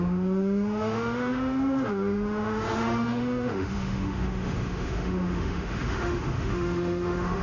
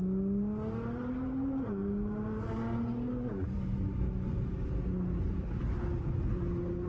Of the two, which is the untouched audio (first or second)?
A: second